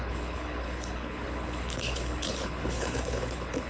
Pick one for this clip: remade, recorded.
remade